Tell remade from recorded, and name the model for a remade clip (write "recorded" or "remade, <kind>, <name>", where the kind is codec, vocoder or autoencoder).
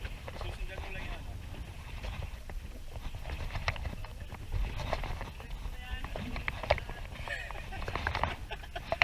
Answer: recorded